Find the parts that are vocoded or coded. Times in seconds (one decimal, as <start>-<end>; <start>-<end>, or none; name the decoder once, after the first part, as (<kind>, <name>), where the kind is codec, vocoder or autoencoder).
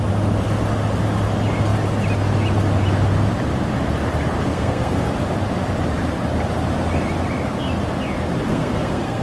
4.5-5.1 (codec, SNAC); 8.5-9.2